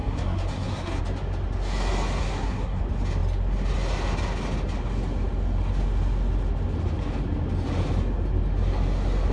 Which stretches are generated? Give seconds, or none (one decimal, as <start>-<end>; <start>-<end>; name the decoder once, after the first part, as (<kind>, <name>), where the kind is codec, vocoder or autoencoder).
0.0-1.0 (codec, SNAC); 2.2-2.8